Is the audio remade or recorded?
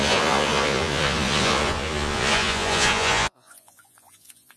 remade